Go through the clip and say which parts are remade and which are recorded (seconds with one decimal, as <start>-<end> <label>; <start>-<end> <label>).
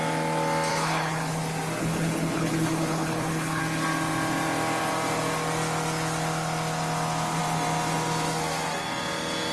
0.0-0.7 recorded; 0.7-1.4 remade; 1.4-1.8 recorded; 1.8-3.6 remade; 3.6-9.5 recorded